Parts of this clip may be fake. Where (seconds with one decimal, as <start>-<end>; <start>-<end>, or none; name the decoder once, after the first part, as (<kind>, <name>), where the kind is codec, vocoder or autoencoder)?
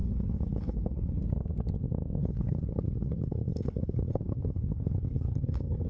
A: 0.0-1.2 (codec, HILCodec); 2.2-5.9